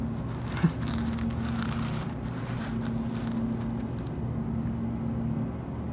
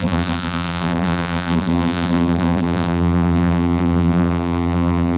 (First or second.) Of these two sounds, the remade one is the second